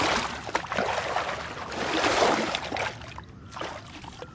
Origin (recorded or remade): recorded